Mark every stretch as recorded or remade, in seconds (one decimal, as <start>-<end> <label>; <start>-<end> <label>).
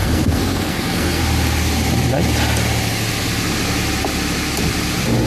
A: 0.0-1.2 remade; 1.2-5.3 recorded